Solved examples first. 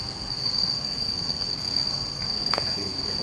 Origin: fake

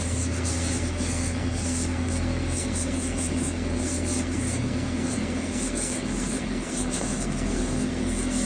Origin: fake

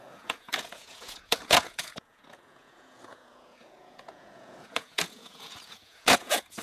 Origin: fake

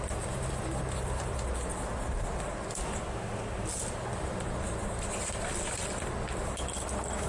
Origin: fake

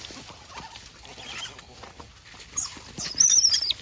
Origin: real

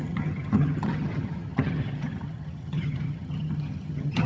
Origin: fake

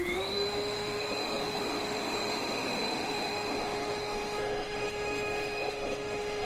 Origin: fake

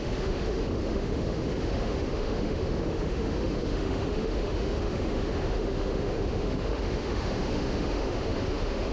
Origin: fake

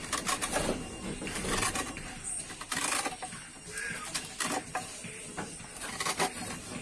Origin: real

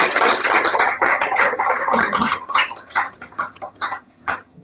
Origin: fake